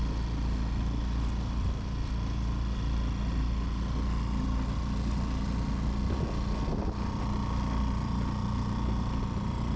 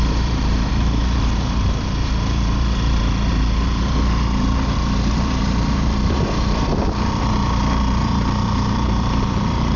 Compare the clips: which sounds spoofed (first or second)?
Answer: second